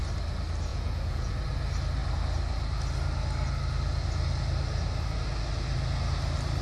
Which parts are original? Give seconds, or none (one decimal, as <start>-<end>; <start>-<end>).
0.0-0.7; 1.3-6.6